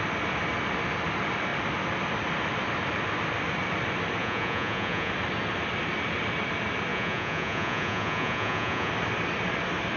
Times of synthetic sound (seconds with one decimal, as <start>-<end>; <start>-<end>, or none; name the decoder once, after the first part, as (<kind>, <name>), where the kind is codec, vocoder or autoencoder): 4.2-5.1 (vocoder, Vocos); 6.9-8.9